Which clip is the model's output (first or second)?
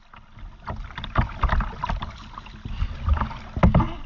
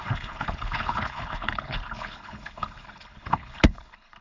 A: second